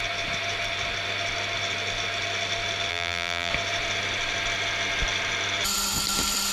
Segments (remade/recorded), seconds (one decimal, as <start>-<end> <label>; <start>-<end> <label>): 0.0-2.9 recorded; 2.9-3.5 remade; 3.5-6.5 recorded